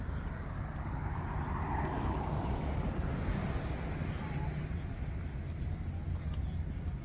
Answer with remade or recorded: recorded